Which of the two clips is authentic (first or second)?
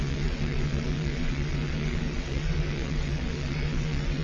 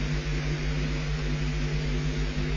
second